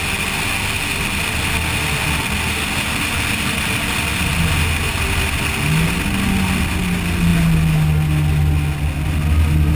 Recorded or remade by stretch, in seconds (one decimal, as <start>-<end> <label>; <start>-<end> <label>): 0.0-9.7 recorded